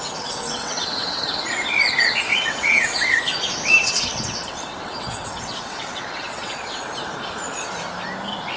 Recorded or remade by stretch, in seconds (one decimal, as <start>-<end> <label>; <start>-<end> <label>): 0.0-1.2 remade; 1.2-2.3 recorded; 2.3-3.2 remade; 3.2-3.8 recorded; 3.8-6.8 remade; 6.8-8.6 recorded